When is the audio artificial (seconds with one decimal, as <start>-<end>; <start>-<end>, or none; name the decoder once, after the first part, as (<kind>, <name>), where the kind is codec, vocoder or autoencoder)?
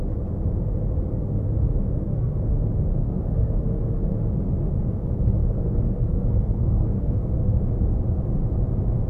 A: 1.8-2.5 (codec, SNAC); 3.0-3.6; 5.4-7.3